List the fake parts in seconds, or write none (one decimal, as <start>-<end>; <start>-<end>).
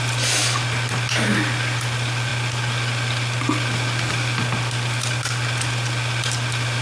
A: none